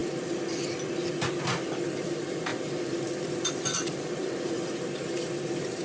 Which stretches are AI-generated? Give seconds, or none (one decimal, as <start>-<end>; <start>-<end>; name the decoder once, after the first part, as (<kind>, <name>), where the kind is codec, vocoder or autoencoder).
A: 0.0-0.6 (vocoder, BigVGAN v2); 2.5-4.5